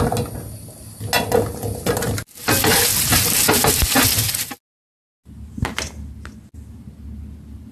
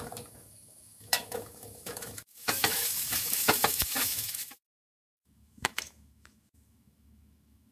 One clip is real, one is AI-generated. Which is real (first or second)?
first